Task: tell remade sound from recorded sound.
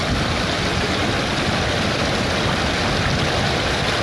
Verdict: recorded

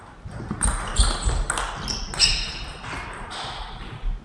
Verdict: recorded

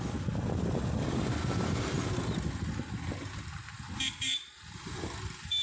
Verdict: recorded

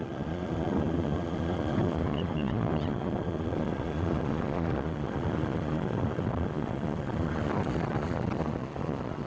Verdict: remade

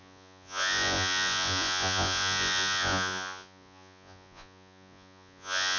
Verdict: remade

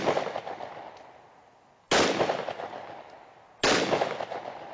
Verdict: recorded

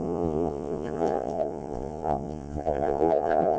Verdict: remade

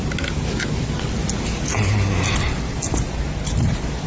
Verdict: recorded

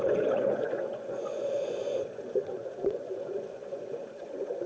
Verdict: remade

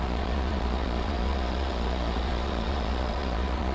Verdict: remade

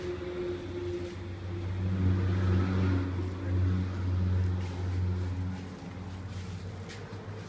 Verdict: recorded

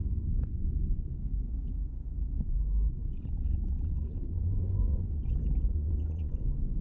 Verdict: remade